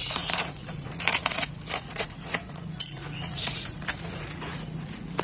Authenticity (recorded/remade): remade